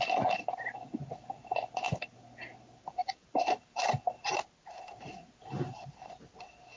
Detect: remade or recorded recorded